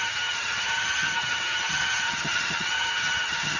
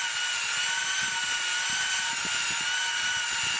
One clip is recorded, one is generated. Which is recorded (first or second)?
second